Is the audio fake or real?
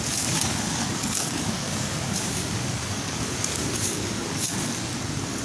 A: fake